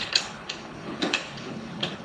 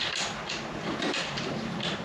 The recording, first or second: second